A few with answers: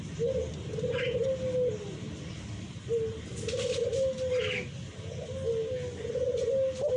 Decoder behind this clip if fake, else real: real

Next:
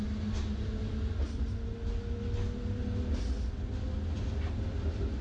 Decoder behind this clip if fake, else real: real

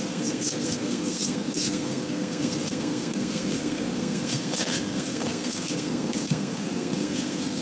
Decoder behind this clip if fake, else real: fake, codec, SNAC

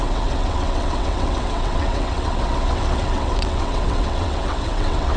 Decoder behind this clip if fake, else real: fake, vocoder, WaveNeXt